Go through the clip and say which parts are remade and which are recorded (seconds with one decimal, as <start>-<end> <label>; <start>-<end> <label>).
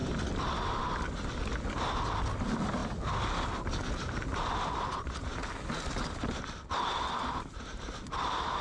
0.0-8.6 recorded